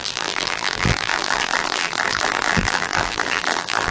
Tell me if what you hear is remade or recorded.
remade